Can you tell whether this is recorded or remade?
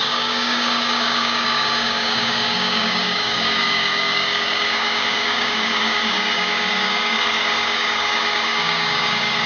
remade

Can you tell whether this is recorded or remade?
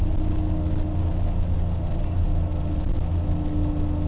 recorded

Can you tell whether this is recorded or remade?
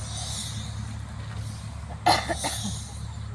recorded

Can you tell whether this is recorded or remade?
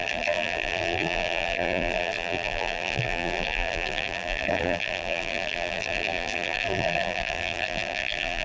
remade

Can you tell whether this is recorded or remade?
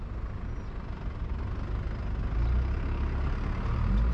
recorded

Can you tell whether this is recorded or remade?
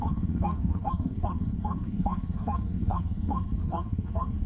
remade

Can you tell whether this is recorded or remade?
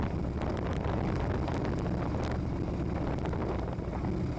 recorded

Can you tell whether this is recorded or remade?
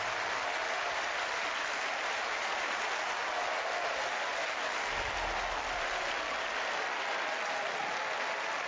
recorded